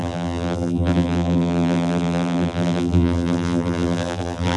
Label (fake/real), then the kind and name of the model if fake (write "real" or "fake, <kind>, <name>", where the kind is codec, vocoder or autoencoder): fake, vocoder, BigVGAN v2